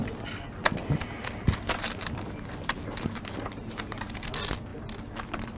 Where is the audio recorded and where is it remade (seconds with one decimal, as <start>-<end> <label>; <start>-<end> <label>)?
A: 0.0-0.8 recorded; 0.8-4.2 remade; 4.2-5.6 recorded